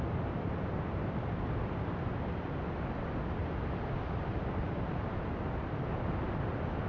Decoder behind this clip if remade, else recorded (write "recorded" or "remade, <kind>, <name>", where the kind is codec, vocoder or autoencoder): recorded